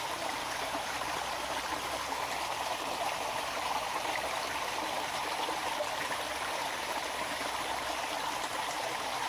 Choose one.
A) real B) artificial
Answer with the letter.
B